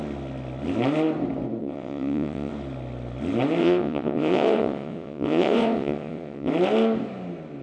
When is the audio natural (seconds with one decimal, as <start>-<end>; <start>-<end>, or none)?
0.0-1.6; 2.5-3.6; 6.5-7.6